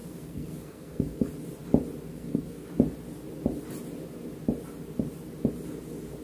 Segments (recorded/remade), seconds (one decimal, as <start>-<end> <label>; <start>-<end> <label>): 0.0-1.3 remade; 1.3-2.1 recorded; 2.1-2.7 remade; 2.7-6.2 recorded